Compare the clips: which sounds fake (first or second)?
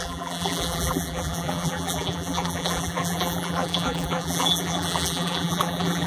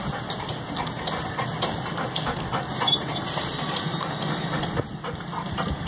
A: first